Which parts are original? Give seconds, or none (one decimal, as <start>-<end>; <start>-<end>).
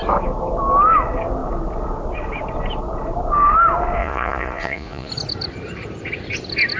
0.0-4.0; 5.1-6.8